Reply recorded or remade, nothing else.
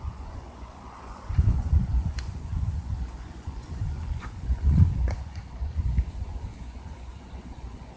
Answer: remade